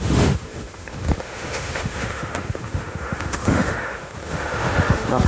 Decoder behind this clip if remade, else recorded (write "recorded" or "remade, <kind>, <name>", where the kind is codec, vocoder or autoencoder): remade, autoencoder, DAC-VAE